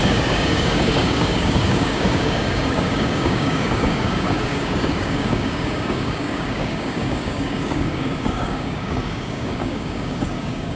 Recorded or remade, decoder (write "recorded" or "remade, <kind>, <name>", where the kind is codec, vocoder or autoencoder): remade, codec, DAC